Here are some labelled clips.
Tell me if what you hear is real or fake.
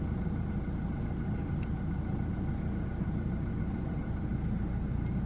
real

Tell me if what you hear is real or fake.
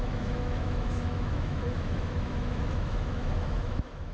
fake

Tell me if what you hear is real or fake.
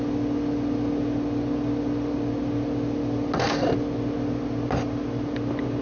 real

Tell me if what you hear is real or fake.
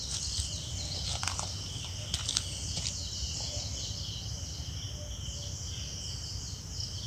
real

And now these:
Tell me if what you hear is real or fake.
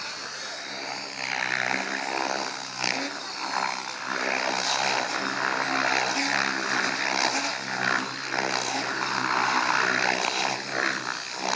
real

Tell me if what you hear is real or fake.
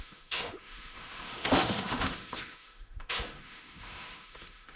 fake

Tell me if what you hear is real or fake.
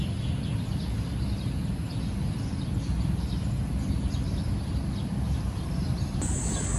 real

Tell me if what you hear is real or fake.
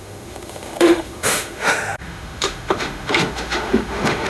fake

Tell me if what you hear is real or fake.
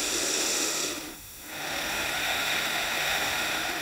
fake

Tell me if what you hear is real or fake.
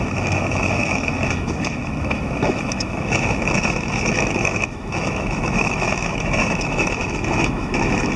fake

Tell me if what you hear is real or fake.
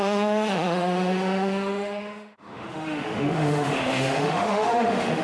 fake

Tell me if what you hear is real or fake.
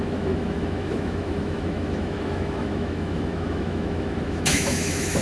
fake